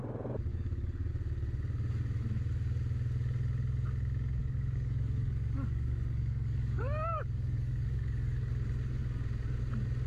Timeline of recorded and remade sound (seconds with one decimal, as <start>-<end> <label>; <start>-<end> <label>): 0.0-0.5 recorded; 0.5-1.1 remade; 1.1-4.4 recorded; 4.4-8.5 remade; 8.5-10.1 recorded